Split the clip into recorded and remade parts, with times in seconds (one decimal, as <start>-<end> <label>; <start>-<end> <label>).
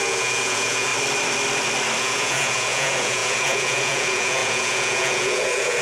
0.0-0.9 remade; 0.9-2.0 recorded; 2.0-5.8 remade